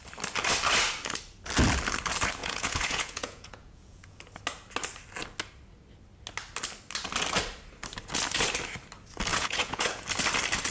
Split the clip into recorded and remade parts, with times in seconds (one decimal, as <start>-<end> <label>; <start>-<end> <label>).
0.0-2.4 recorded; 2.4-4.2 remade; 4.2-9.3 recorded; 9.3-10.0 remade; 10.0-10.7 recorded